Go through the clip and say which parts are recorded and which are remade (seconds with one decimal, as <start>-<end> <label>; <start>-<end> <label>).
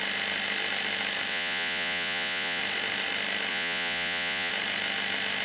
0.0-1.3 recorded; 1.3-2.6 remade; 2.6-3.5 recorded; 3.5-4.5 remade; 4.5-5.4 recorded